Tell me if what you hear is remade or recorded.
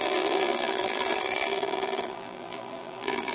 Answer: remade